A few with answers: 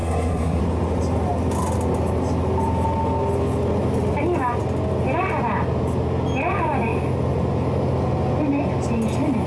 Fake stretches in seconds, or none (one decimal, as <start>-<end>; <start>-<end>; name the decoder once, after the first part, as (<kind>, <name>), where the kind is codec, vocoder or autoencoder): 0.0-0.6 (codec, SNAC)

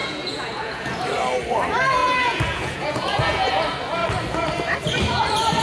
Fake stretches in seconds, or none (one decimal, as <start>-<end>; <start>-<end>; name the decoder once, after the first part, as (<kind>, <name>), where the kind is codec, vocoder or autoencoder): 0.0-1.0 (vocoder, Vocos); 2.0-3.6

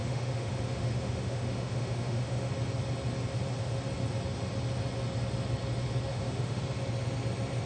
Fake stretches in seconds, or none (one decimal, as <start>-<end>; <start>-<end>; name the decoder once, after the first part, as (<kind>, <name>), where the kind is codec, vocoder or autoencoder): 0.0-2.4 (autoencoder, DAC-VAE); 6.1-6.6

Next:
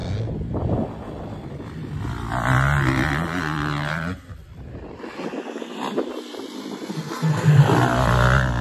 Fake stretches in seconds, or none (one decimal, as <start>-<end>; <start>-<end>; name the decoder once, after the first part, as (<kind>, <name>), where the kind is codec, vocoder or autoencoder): 6.9-7.6 (codec, SNAC)

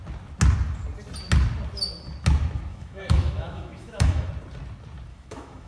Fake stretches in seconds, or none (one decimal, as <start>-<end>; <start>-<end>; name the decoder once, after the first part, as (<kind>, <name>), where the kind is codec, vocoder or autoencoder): 2.7-4.3 (autoencoder, DAC-VAE); 5.1-5.7